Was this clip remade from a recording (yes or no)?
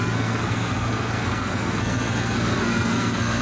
yes